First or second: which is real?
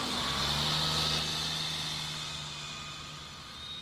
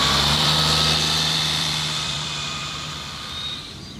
first